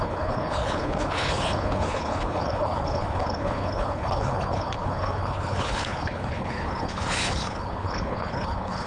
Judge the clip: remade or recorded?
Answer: remade